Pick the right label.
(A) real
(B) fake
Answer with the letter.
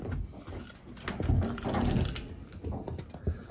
A